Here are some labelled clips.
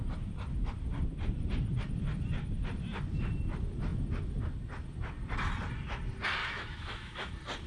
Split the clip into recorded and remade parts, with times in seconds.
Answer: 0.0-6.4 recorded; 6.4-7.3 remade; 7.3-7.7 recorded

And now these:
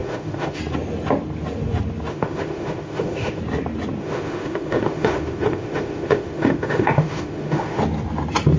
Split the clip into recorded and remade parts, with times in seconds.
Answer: 0.0-0.6 remade; 0.6-2.1 recorded; 2.1-3.4 remade; 3.4-4.0 recorded; 4.0-7.8 remade; 7.8-8.6 recorded